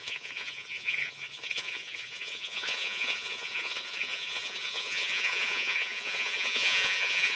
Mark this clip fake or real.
fake